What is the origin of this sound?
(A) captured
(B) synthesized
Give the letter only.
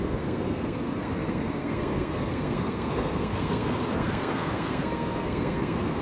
B